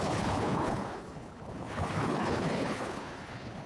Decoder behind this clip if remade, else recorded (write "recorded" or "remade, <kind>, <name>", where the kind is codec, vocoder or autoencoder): remade, codec, HILCodec